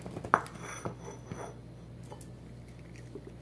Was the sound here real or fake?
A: real